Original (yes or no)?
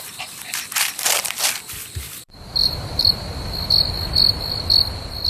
no